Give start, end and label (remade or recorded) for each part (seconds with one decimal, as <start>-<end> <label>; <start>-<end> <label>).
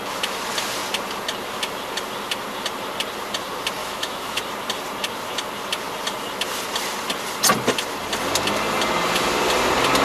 0.0-3.8 recorded; 3.8-4.4 remade; 4.4-10.0 recorded